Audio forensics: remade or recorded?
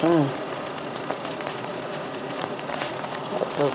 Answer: remade